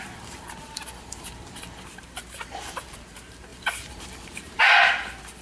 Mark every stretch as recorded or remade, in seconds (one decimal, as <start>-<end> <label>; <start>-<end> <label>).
0.0-5.4 remade